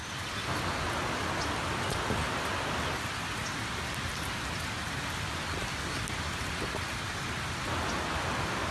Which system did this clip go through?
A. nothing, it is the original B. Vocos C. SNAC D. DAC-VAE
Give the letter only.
A